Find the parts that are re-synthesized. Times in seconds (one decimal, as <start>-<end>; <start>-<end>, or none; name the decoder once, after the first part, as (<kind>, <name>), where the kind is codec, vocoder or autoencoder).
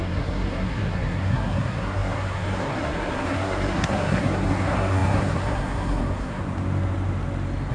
0.0-6.4 (codec, SNAC)